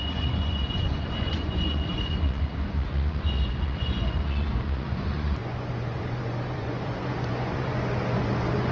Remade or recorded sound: remade